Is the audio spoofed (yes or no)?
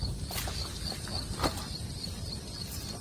no